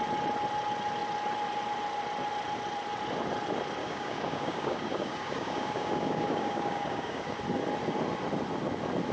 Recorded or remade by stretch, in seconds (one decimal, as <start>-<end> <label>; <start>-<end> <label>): 0.0-3.8 recorded; 3.8-7.4 remade; 7.4-9.1 recorded